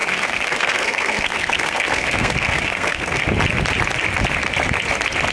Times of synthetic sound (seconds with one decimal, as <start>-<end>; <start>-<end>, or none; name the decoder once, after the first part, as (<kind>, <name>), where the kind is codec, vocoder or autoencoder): 0.0-3.2 (codec, SNAC)